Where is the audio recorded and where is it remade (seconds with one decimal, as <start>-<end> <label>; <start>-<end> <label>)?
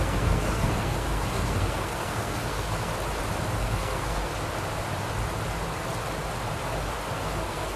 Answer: 0.0-2.9 remade; 2.9-3.6 recorded; 3.6-4.3 remade; 4.3-7.1 recorded; 7.1-7.8 remade